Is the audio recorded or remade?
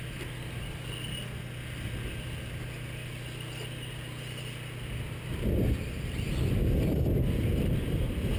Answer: recorded